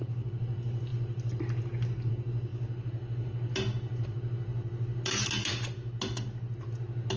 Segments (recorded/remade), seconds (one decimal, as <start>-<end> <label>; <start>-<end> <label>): 0.0-7.2 recorded